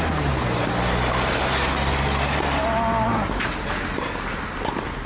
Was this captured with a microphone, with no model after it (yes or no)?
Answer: yes